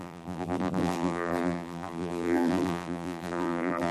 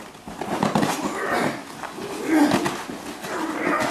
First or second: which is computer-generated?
first